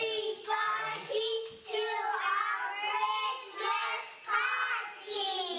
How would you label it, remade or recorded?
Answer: recorded